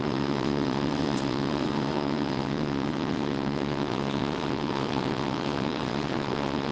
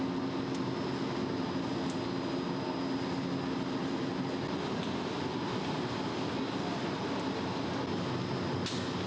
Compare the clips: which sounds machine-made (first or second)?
first